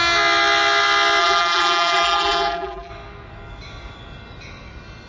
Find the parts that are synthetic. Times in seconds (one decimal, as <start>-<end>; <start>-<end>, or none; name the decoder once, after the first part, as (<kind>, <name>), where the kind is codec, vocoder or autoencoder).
1.2-2.9 (vocoder, BigVGAN v2)